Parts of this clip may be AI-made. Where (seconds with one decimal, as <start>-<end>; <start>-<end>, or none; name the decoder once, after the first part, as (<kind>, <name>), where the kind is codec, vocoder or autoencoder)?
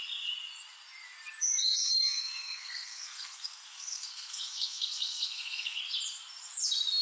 1.6-5.8 (codec, SNAC)